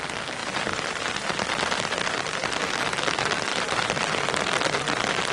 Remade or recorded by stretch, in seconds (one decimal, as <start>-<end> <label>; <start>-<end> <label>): 0.0-0.4 recorded; 0.4-2.1 remade; 2.1-3.5 recorded; 3.5-4.2 remade; 4.2-5.3 recorded